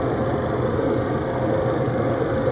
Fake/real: real